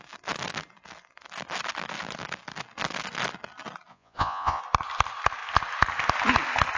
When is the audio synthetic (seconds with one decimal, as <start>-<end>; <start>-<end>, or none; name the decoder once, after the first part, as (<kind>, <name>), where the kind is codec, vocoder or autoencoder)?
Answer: 3.9-4.6 (vocoder, Vocos)